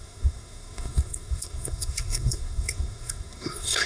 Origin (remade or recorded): remade